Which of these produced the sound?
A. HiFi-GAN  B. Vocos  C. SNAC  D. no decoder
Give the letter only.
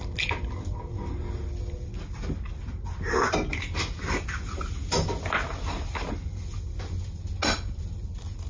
D